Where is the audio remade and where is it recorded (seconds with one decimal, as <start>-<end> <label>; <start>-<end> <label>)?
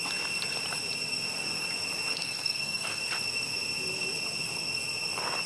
0.0-2.1 recorded; 2.1-3.0 remade; 3.0-5.5 recorded